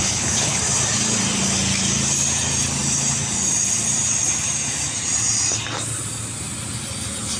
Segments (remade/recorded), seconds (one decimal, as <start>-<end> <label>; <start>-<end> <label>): 0.0-0.6 remade; 0.6-7.4 recorded